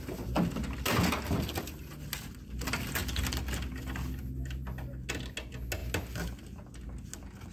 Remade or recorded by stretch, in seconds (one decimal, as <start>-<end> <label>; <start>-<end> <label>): 0.0-7.5 recorded